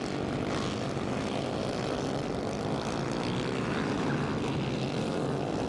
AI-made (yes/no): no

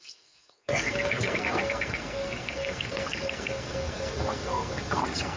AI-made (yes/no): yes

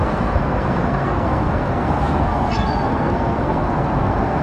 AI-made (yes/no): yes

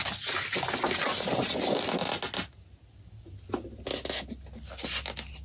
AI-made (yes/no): no